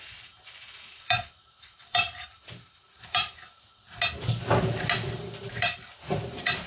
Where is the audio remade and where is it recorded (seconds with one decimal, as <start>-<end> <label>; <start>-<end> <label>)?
0.0-3.4 remade; 3.4-5.1 recorded; 5.1-6.7 remade